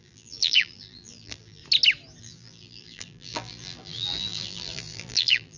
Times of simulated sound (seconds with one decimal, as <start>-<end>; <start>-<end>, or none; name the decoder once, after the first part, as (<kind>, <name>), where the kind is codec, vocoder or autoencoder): 0.0-1.6 (vocoder, BigVGAN v2); 2.2-5.6